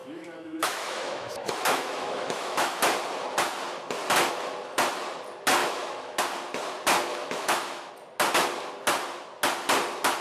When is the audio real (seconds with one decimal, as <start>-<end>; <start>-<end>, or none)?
2.8-5.6; 6.2-7.1; 7.9-10.2